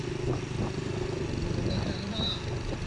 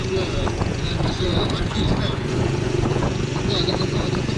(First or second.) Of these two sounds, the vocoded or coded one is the second